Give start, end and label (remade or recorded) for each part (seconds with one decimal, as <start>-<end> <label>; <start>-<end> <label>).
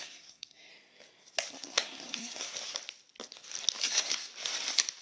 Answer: 0.0-0.7 remade; 0.7-1.5 recorded; 1.5-2.5 remade; 2.5-3.8 recorded; 3.8-4.3 remade; 4.3-5.0 recorded